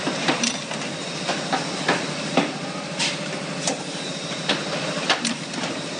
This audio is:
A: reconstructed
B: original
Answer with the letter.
B